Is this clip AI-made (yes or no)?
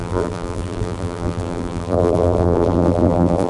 yes